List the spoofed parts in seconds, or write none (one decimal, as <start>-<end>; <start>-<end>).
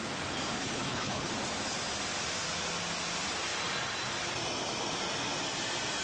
0.6-1.3